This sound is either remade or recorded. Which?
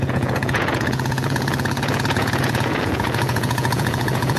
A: remade